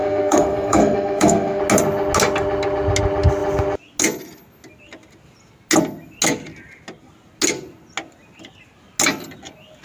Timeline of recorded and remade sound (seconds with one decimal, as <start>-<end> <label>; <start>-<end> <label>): 0.0-1.6 remade; 1.6-9.8 recorded